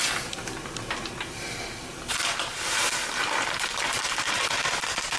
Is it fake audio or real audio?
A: real